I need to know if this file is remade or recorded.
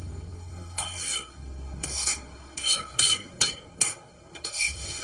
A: remade